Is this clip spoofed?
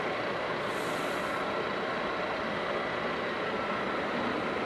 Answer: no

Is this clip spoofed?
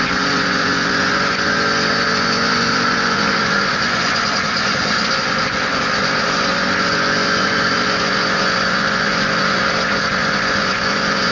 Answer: yes